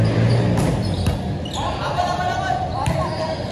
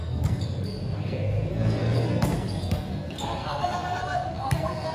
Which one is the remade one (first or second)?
second